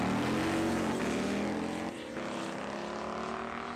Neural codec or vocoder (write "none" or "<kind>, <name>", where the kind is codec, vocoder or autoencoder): none